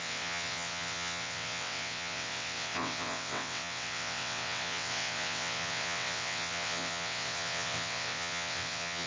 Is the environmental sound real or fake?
fake